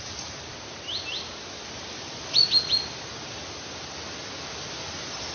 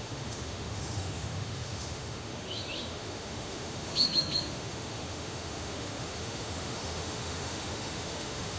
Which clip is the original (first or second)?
first